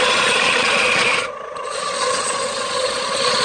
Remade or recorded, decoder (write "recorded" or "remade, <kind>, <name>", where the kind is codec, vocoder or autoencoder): remade, vocoder, Vocos